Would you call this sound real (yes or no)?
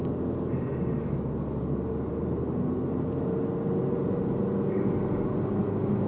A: yes